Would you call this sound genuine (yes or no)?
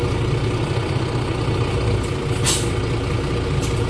yes